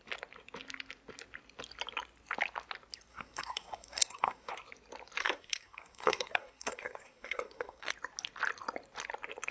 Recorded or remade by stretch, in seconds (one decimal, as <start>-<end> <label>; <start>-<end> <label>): 0.0-3.1 recorded; 3.1-4.5 remade; 4.5-5.2 recorded; 5.2-7.9 remade; 7.9-9.5 recorded